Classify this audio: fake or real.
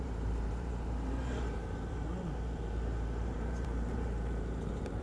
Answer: fake